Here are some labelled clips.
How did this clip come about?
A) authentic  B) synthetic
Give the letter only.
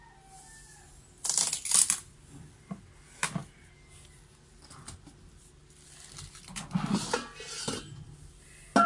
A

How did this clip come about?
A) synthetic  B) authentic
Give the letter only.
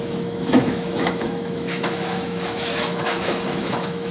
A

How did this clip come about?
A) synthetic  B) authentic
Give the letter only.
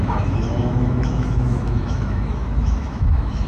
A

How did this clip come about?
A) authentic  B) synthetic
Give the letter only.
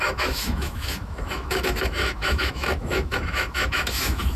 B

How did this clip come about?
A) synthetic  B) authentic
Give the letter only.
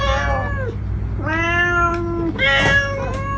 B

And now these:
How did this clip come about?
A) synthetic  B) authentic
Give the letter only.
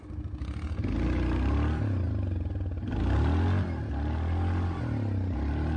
B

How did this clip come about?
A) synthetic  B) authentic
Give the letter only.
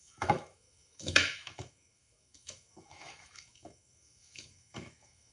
A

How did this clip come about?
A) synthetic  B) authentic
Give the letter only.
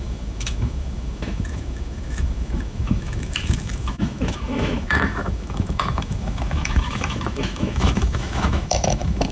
A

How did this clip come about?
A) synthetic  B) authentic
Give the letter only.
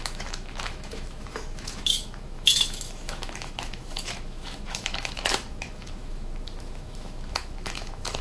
A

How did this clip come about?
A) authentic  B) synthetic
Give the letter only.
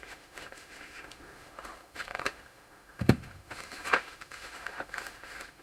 B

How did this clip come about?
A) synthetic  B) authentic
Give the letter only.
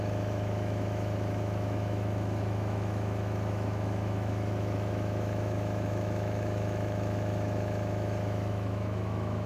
A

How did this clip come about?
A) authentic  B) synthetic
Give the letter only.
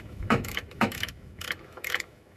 B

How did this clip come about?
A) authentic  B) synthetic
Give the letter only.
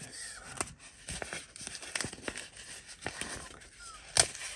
A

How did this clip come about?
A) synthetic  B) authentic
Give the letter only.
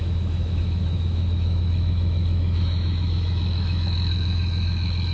A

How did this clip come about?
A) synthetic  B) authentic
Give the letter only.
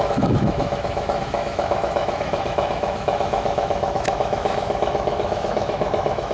A